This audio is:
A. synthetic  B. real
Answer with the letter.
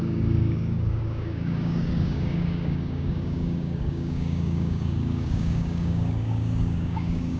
A